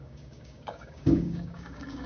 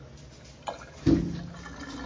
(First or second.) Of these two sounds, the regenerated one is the first